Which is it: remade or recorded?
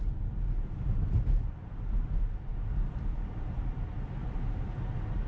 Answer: remade